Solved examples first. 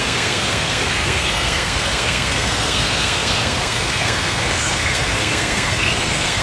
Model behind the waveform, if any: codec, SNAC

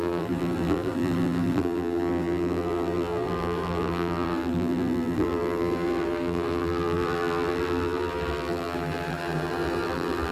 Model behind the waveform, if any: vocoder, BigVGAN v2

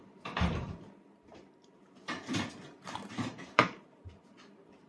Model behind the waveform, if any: vocoder, BigVGAN v2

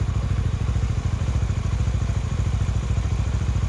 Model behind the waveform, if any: vocoder, BigVGAN v2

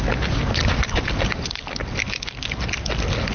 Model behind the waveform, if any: none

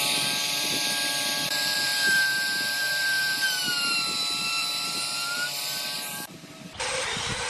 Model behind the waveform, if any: vocoder, BigVGAN v2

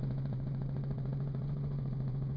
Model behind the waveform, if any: vocoder, Vocos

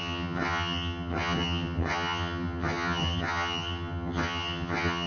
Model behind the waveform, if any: vocoder, HiFi-GAN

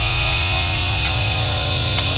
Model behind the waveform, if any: vocoder, Vocos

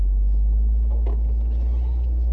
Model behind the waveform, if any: none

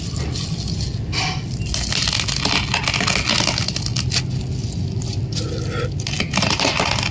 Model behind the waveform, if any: none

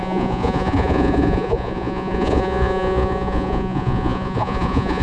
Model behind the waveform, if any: vocoder, Vocos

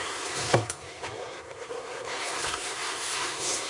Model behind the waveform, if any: codec, SNAC